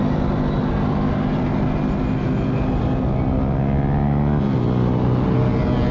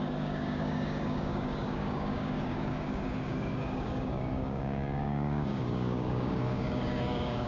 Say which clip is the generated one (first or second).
second